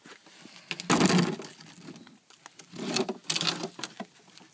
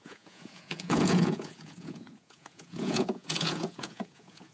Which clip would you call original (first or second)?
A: first